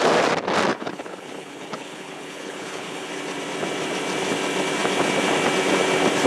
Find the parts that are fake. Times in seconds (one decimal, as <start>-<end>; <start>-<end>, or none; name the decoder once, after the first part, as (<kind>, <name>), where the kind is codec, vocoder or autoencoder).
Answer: 0.7-3.1 (codec, HILCodec)